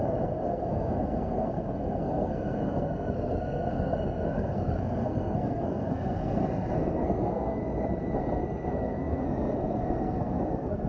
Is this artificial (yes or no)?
yes